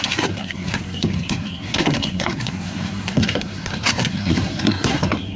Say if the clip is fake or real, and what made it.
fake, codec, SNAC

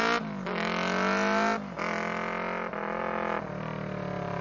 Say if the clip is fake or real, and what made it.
real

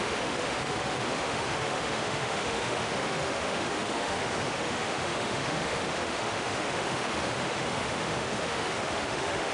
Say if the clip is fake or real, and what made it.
fake, autoencoder, DAC-VAE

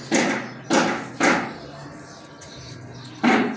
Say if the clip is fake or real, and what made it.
real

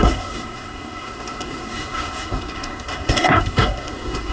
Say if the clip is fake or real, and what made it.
fake, codec, SNAC